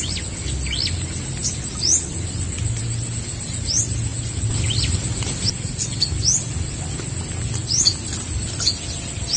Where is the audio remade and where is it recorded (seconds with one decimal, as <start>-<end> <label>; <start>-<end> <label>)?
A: 0.0-9.4 recorded